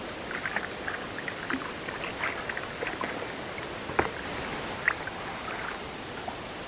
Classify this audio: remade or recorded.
recorded